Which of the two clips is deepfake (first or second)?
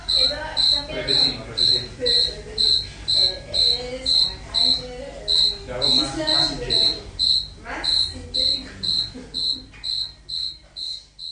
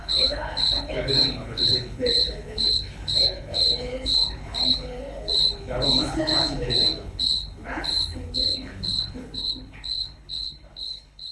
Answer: second